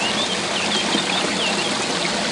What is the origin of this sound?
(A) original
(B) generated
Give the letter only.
A